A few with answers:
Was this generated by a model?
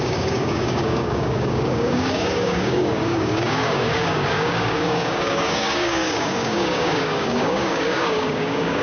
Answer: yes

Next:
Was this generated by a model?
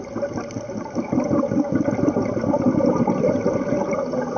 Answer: no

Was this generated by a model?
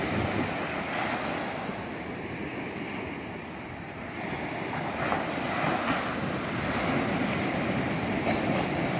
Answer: no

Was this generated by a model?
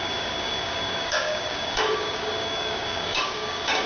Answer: yes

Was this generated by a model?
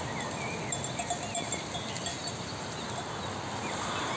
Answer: no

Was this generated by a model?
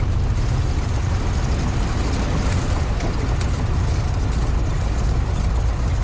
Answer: no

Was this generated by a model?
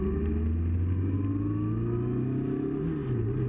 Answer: no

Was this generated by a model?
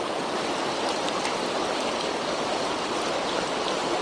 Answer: no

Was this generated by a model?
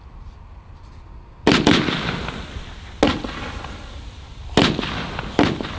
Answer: no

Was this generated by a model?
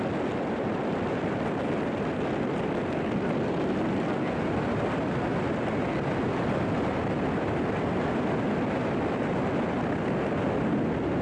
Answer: no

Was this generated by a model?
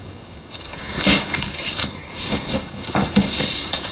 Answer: yes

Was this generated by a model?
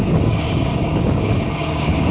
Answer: yes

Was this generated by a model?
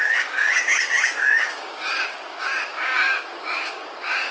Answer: yes